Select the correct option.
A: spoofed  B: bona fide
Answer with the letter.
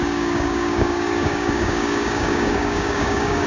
A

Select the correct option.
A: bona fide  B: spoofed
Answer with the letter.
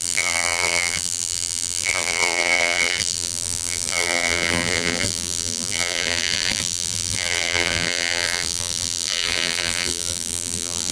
B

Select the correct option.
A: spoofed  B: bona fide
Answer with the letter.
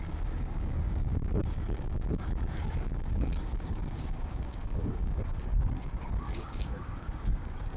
A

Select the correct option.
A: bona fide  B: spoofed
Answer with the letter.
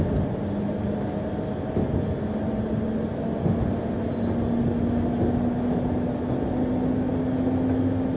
A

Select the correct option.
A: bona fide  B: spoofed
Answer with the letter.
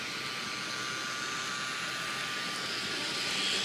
A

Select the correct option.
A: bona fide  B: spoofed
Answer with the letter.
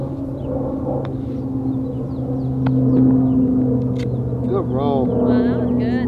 A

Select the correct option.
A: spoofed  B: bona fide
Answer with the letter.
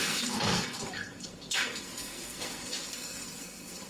A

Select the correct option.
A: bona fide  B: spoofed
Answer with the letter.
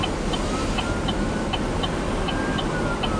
A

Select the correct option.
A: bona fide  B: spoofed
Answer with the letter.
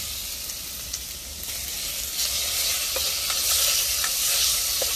A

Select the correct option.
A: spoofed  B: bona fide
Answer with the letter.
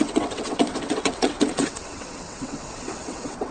A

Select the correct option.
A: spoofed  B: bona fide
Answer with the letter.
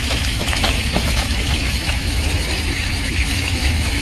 A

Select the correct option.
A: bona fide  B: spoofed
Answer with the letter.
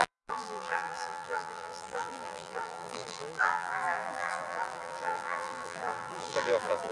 B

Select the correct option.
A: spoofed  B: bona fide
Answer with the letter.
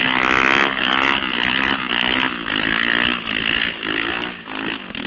B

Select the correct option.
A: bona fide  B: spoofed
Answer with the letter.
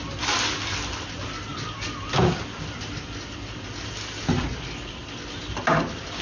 A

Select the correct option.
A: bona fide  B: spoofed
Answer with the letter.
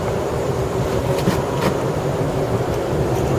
A